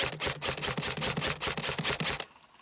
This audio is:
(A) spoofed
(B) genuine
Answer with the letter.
B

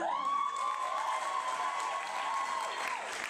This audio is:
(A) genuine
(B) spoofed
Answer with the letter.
A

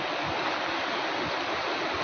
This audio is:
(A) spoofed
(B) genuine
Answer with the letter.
A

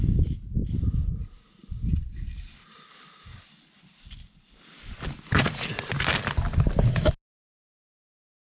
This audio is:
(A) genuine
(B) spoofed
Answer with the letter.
A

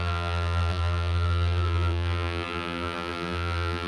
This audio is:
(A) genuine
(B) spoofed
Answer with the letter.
B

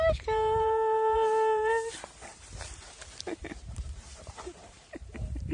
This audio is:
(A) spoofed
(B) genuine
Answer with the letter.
A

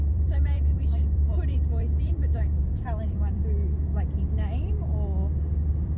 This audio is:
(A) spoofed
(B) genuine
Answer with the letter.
A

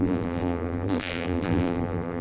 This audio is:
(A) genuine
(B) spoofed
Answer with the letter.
B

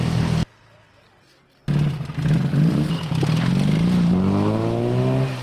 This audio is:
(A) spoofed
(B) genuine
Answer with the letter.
B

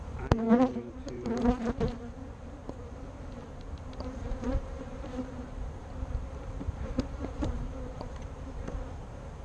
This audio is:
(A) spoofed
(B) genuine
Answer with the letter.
A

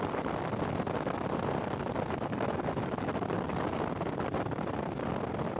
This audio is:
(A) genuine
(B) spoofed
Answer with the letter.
A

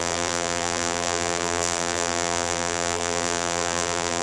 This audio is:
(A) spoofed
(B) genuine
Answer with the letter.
A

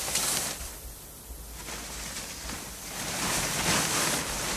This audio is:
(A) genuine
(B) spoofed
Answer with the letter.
A